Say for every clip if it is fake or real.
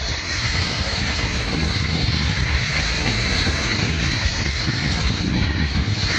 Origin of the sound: fake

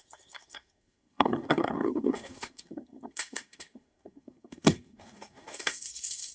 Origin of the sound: fake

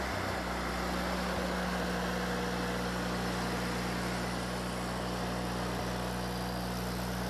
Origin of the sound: real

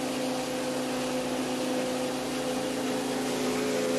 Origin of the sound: real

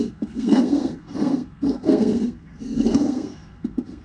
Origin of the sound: fake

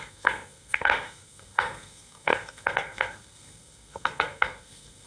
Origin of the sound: fake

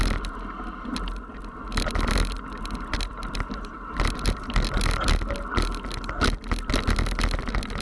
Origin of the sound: real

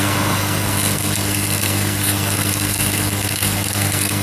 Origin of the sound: fake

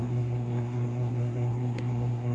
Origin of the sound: fake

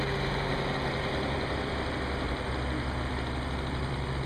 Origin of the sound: real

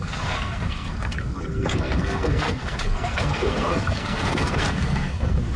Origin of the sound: fake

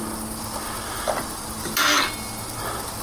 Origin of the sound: real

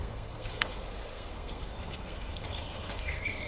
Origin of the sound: fake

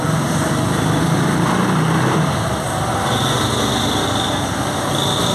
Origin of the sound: real